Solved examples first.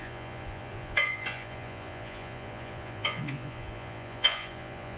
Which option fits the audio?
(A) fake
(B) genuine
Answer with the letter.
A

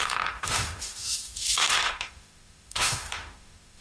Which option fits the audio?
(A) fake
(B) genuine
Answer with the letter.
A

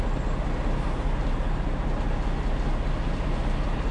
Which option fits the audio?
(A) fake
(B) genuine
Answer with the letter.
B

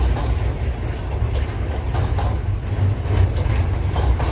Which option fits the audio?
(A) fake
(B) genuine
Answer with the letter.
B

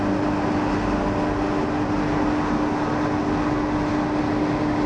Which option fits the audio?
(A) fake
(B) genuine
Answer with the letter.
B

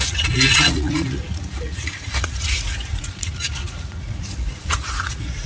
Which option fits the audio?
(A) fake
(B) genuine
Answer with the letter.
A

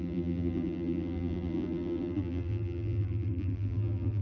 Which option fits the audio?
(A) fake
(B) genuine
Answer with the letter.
A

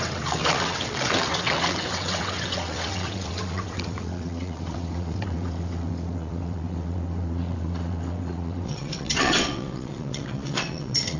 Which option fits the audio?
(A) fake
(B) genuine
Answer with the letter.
A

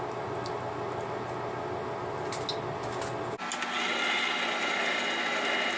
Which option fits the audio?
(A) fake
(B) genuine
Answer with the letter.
B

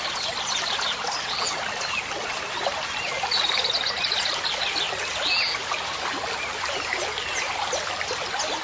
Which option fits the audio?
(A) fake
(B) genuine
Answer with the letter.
B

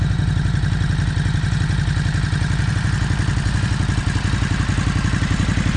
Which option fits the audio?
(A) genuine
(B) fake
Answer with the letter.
A